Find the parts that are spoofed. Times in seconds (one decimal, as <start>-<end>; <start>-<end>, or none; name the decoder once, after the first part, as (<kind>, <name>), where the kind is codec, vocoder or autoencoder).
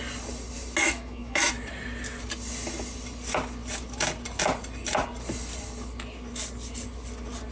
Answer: 0.8-1.5 (autoencoder, DAC-VAE)